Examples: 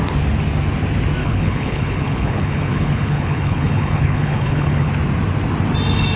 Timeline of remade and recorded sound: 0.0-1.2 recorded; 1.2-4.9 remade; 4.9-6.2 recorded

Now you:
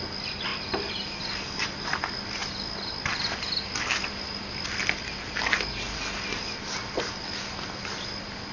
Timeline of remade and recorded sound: 0.0-8.5 recorded

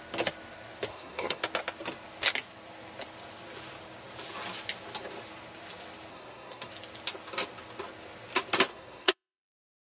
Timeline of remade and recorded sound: 0.0-0.9 recorded; 0.9-1.4 remade; 1.4-6.1 recorded; 6.1-6.7 remade; 6.7-8.7 recorded; 8.7-9.9 remade

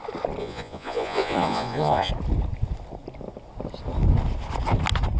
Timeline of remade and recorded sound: 0.0-0.4 recorded; 0.4-2.1 remade; 2.1-5.2 recorded

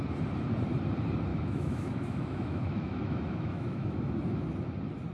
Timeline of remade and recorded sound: 0.0-1.3 recorded; 1.3-4.1 remade; 4.1-5.1 recorded

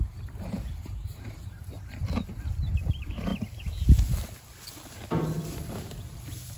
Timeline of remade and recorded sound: 0.0-2.0 remade; 2.0-2.9 recorded; 2.9-3.3 remade; 3.3-5.5 recorded; 5.5-6.6 remade

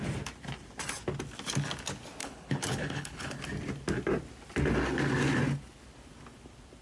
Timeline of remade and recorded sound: 0.0-2.2 recorded; 2.2-3.4 remade; 3.4-6.8 recorded

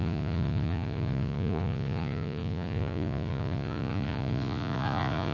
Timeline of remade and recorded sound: 0.0-5.3 remade